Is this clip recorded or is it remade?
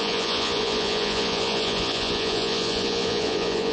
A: remade